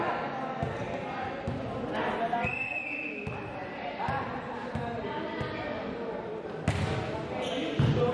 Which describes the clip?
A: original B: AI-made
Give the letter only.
A